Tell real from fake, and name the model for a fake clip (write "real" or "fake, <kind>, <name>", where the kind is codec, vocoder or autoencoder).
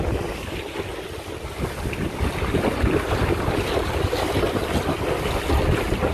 real